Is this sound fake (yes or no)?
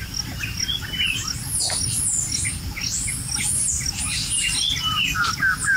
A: no